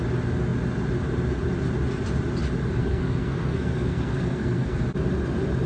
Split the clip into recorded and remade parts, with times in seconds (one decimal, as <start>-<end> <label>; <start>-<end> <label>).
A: 0.0-2.8 recorded; 2.8-4.8 remade; 4.8-5.7 recorded